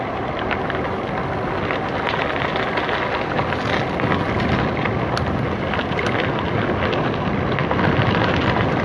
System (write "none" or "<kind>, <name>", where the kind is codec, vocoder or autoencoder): none